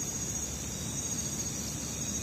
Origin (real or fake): real